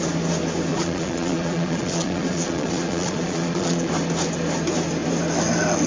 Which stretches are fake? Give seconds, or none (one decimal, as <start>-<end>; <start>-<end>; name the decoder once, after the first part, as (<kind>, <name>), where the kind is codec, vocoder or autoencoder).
0.7-3.9 (vocoder, Vocos)